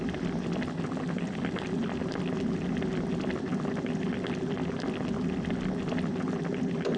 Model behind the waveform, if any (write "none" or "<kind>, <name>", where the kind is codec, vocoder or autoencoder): none